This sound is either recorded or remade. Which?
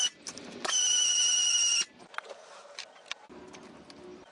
recorded